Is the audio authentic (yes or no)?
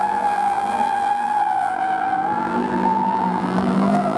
no